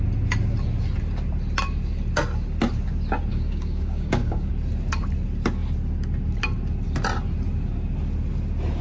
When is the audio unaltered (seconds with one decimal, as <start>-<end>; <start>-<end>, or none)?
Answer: 0.0-3.3; 4.5-8.8